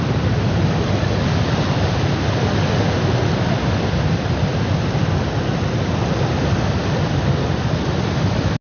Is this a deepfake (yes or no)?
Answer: no